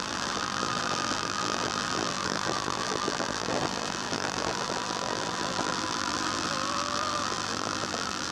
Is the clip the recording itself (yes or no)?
no